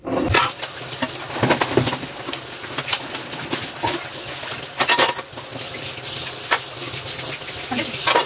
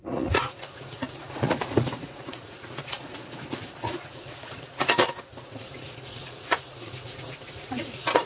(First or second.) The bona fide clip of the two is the first